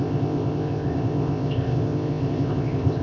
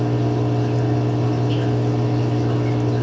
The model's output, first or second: first